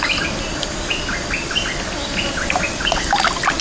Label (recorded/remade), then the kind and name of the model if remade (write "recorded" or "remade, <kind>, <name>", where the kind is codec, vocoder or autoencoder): recorded